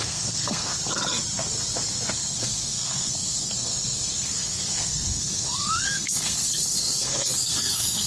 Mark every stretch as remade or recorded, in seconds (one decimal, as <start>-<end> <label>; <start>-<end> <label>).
0.0-0.7 remade; 0.7-2.1 recorded; 2.1-8.1 remade